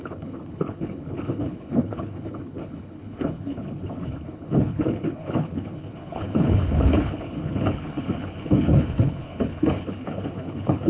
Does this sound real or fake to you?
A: fake